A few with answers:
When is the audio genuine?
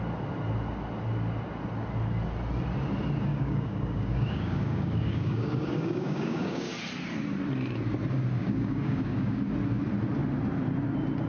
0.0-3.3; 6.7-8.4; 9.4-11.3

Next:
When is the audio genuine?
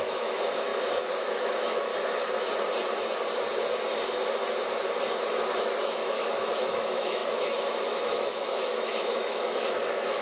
0.7-1.2; 1.9-5.8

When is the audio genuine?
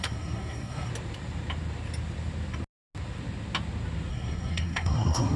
0.9-4.1